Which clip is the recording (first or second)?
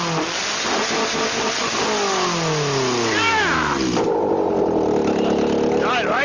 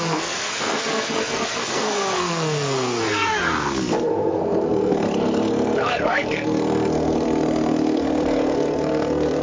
first